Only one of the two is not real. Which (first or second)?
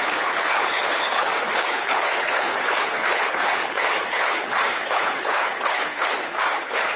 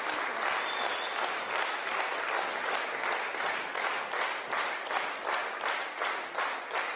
first